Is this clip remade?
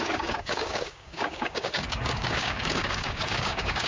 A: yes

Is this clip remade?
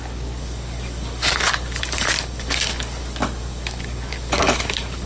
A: yes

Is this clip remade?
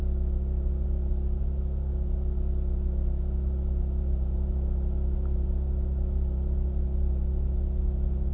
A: no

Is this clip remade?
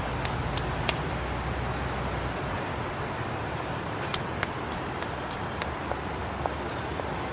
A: no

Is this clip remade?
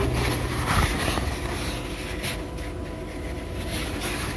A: no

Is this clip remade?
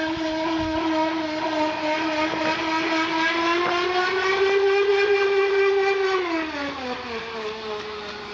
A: no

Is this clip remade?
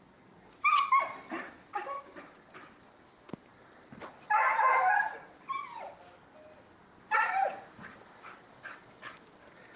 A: no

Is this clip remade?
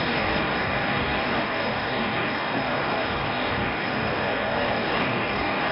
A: yes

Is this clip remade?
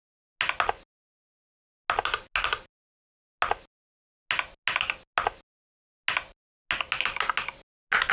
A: no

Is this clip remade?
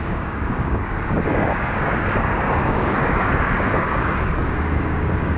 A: yes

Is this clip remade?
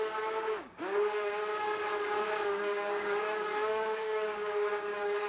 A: yes